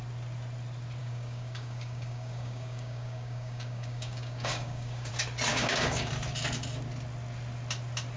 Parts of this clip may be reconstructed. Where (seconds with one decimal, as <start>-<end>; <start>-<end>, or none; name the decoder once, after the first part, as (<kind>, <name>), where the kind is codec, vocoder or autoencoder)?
1.0-5.1 (codec, DAC); 5.5-6.1

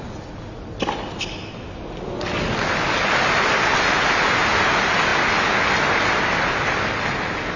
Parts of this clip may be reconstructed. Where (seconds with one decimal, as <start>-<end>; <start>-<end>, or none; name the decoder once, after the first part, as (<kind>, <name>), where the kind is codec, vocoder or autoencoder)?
none

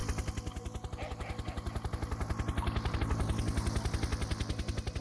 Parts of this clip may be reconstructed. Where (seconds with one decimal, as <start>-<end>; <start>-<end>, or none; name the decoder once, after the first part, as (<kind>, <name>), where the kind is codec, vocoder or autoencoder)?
none